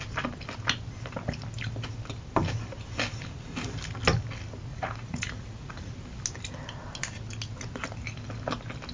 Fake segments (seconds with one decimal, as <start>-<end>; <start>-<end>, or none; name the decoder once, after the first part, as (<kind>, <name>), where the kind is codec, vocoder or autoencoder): 4.7-5.9 (vocoder, Vocos)